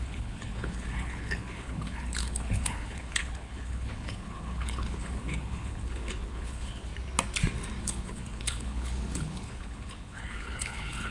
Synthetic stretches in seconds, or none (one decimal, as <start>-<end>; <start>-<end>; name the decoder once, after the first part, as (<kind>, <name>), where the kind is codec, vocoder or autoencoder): 0.0-6.9 (codec, HILCodec); 7.8-11.1